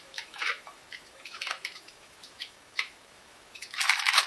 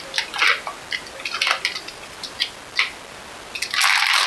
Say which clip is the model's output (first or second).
first